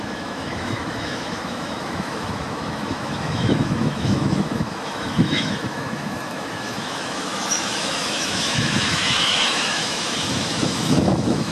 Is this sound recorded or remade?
remade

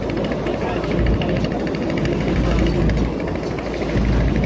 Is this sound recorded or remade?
recorded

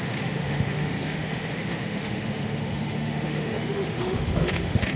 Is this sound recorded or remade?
remade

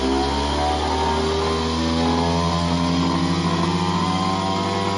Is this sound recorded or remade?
recorded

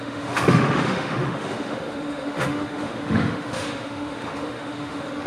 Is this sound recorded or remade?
remade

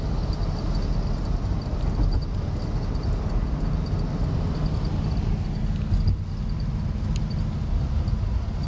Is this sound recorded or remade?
recorded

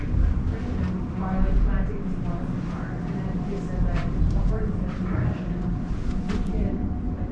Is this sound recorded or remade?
recorded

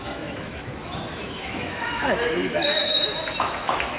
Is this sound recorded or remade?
remade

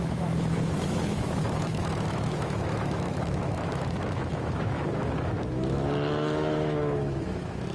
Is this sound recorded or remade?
remade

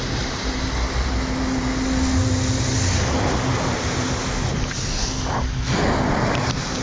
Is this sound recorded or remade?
recorded